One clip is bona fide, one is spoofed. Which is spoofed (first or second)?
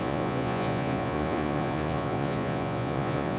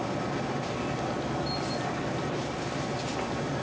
first